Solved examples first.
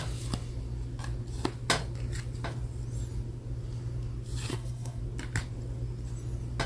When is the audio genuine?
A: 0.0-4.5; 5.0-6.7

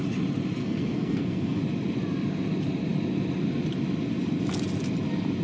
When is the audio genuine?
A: 0.0-0.6; 1.6-5.4

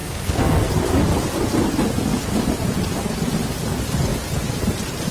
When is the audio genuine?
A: 0.7-5.1

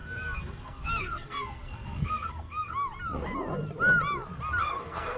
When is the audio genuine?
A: 2.7-4.6

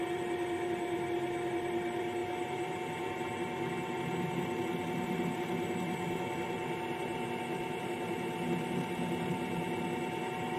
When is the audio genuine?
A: 0.0-10.6

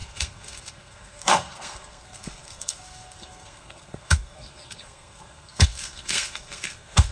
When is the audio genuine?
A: none

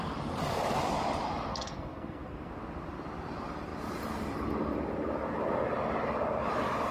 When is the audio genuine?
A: 0.0-1.5; 2.5-6.9

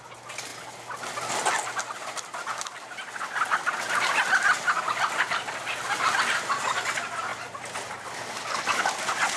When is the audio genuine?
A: 0.0-9.4